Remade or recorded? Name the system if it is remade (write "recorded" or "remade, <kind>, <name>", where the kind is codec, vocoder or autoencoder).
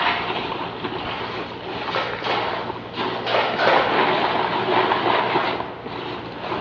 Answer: recorded